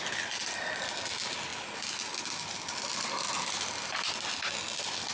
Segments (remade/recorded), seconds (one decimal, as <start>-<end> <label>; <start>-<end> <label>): 0.0-5.1 recorded